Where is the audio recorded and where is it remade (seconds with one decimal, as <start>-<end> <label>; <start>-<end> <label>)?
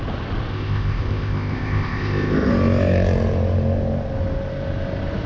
0.0-0.5 recorded; 0.5-2.5 remade; 2.5-5.3 recorded